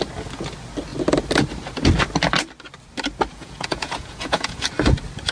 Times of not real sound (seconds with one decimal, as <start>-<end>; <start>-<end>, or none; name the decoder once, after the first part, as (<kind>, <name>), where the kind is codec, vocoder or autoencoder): 3.3-4.6 (vocoder, Vocos)